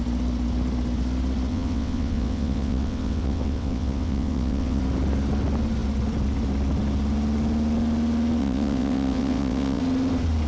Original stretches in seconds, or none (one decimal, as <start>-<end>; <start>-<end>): 0.0-1.5; 4.8-8.4; 9.8-10.5